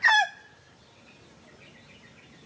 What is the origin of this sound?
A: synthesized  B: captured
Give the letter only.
B